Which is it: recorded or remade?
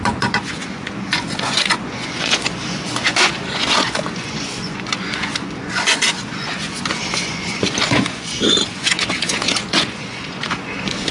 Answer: remade